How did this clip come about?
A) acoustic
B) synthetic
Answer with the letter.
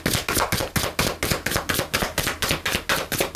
A